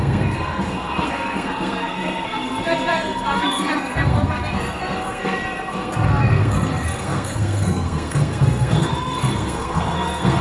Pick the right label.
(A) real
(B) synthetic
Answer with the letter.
B